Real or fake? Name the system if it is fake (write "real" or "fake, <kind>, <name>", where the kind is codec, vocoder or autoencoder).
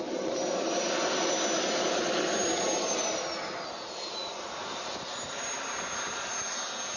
real